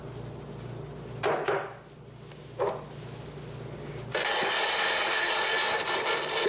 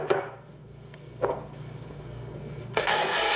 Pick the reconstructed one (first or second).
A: second